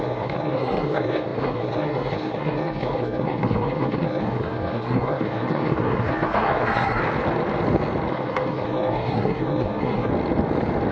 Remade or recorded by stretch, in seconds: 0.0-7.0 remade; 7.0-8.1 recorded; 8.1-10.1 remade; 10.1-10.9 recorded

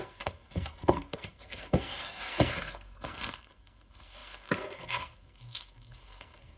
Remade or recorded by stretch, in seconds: 0.0-6.6 remade